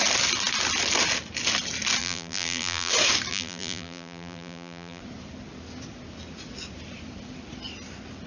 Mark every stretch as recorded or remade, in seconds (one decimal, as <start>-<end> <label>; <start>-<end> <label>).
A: 0.0-2.0 recorded; 2.0-2.9 remade; 2.9-3.3 recorded; 3.3-5.0 remade; 5.0-8.3 recorded